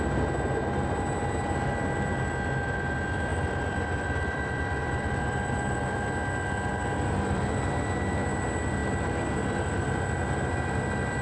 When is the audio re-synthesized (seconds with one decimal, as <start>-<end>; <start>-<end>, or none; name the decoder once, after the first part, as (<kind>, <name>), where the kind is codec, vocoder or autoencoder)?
3.3-5.9 (vocoder, BigVGAN v2); 6.7-7.4